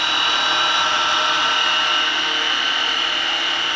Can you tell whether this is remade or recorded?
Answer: recorded